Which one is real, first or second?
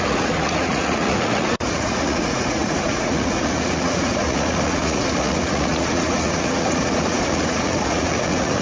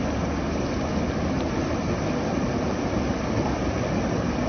second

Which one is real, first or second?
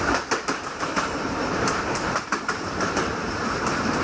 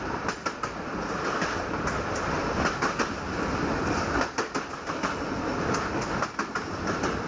second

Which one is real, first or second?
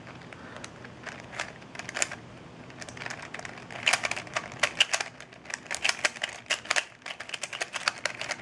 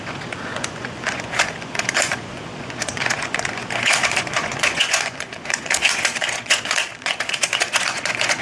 first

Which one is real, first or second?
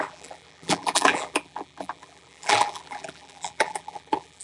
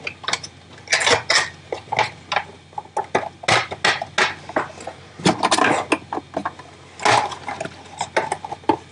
second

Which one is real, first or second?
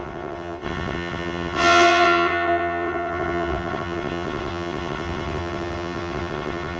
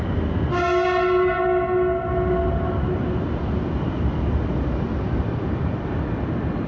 second